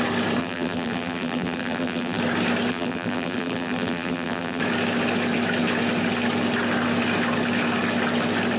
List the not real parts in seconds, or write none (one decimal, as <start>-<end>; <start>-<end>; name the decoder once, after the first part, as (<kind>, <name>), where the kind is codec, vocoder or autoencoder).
0.4-2.2 (vocoder, BigVGAN v2); 2.7-4.6